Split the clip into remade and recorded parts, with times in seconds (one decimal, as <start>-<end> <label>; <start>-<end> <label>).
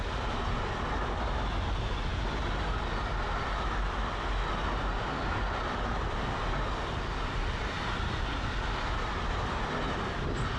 0.0-10.6 recorded